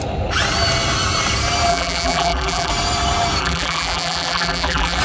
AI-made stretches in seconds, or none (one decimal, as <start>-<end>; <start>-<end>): 1.7-2.7; 3.4-5.0